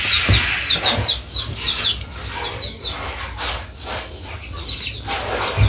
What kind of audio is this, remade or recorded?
recorded